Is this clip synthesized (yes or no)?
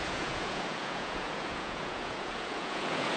yes